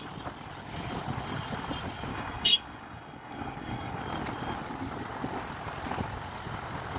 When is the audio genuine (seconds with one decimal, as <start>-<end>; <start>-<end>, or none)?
0.0-2.1; 4.0-7.0